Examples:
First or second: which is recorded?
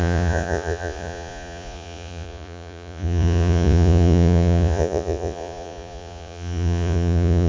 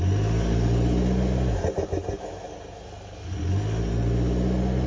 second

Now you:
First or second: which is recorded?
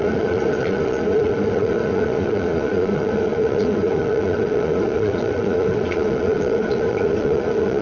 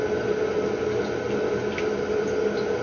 second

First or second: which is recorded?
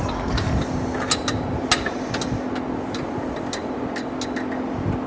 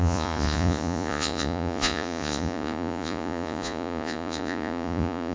first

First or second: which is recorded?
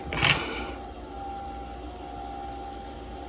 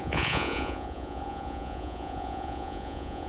first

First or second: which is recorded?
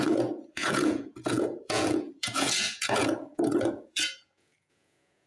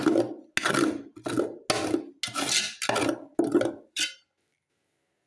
second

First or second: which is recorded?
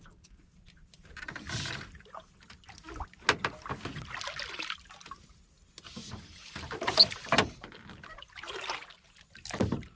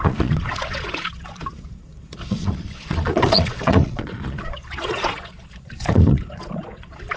first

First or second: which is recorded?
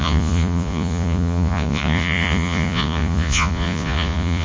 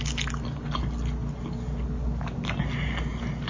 second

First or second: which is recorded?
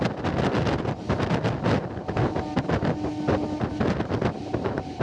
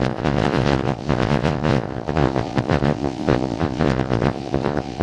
first